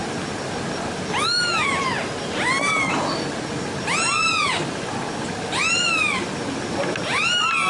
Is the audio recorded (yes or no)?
yes